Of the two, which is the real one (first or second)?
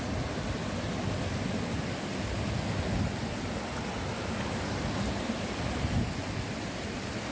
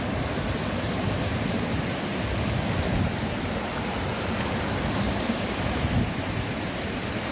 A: first